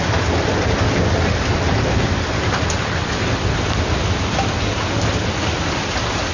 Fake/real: real